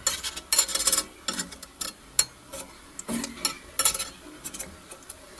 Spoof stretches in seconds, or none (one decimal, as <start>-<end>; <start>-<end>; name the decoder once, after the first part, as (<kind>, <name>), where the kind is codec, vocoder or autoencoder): none